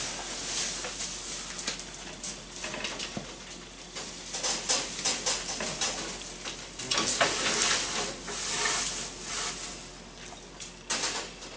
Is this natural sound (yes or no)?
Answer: yes